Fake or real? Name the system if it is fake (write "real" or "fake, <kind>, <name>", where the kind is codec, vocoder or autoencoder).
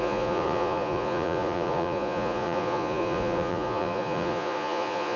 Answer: fake, vocoder, Vocos